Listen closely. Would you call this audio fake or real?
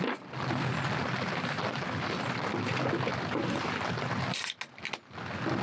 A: real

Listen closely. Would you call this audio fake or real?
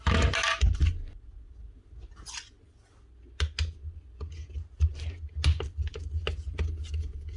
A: real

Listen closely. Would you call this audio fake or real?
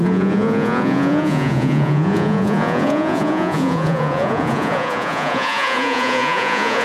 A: fake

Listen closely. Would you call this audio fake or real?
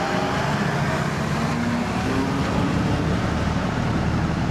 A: real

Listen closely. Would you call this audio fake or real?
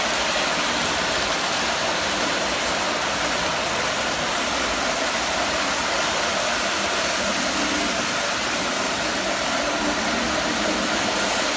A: real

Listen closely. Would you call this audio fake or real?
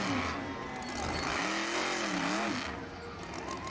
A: real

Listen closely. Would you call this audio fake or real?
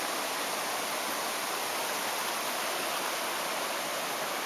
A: real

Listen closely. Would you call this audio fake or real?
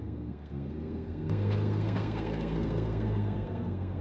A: fake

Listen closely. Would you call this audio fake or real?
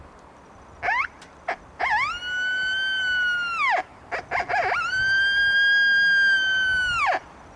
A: real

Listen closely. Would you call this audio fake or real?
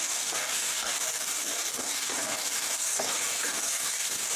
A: fake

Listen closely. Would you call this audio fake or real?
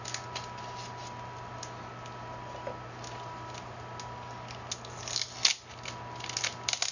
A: real